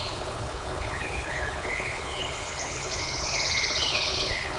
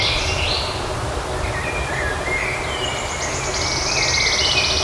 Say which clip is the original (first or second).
second